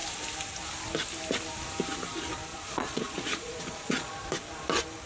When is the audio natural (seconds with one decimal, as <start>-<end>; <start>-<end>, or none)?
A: 0.0-2.5; 4.3-5.1